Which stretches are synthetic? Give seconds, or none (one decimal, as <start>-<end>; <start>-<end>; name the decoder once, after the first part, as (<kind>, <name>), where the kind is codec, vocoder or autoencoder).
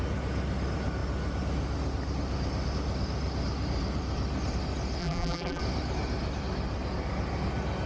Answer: 5.0-5.6 (vocoder, BigVGAN v2)